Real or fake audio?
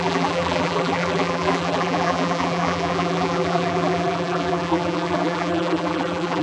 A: fake